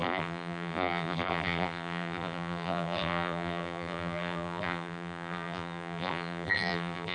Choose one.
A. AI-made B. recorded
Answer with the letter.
A